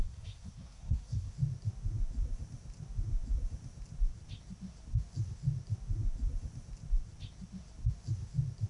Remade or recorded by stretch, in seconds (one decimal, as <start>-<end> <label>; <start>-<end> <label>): 0.0-1.3 remade; 1.3-8.7 recorded